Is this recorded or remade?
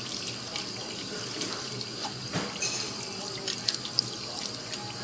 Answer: recorded